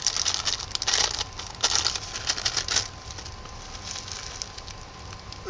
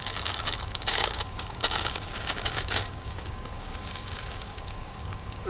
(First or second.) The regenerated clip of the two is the second